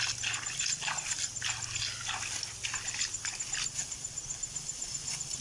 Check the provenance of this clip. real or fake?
real